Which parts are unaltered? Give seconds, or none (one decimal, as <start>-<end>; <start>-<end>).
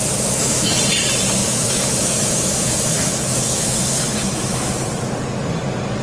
0.8-1.4; 4.7-6.0